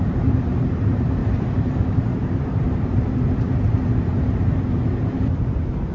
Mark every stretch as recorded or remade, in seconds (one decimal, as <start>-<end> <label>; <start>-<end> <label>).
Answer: 0.0-1.2 remade; 1.2-1.9 recorded; 1.9-5.9 remade